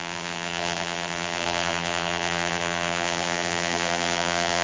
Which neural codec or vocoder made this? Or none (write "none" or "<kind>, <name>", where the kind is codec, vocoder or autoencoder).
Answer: vocoder, BigVGAN v2